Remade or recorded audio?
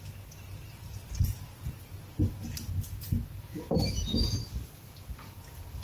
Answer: recorded